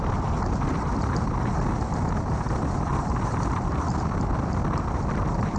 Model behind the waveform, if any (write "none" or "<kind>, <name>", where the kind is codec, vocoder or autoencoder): none